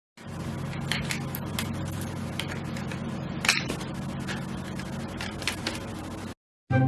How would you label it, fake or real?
real